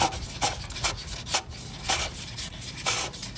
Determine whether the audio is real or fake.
real